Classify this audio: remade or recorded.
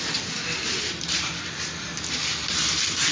recorded